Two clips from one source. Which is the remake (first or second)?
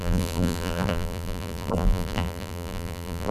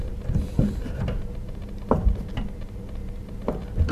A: first